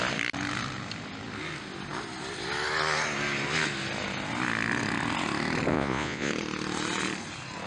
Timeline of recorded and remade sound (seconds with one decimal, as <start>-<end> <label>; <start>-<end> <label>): 0.0-5.7 recorded; 5.7-6.3 remade; 6.3-7.7 recorded